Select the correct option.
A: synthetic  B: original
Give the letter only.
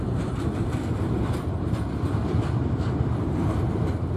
A